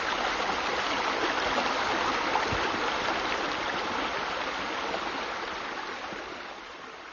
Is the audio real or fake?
real